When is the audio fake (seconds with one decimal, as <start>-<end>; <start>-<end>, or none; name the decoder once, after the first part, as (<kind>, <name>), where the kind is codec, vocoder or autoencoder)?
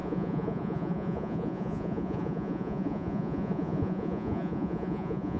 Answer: 0.0-5.4 (vocoder, Vocos)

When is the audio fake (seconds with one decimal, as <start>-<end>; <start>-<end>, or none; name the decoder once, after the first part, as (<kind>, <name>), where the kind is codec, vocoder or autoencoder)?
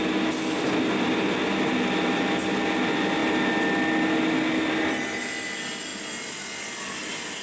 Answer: none